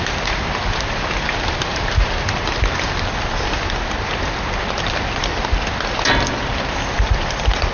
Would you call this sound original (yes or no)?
yes